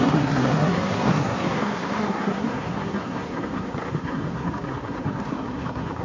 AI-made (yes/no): yes